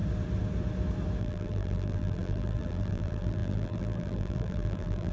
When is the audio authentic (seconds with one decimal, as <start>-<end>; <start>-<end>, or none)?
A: 0.0-1.2